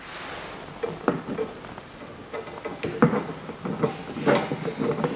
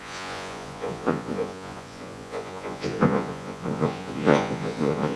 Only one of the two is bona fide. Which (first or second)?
first